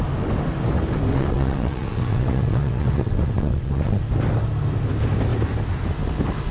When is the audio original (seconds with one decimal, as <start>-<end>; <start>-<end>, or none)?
0.0-1.1; 4.0-6.5